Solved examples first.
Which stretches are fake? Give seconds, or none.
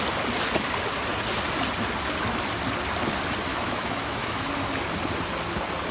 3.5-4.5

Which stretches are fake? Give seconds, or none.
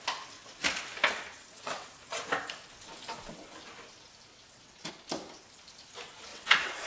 1.3-1.9; 4.3-4.9; 6.3-6.9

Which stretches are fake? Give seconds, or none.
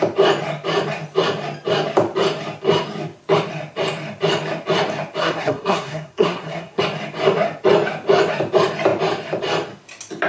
5.2-6.8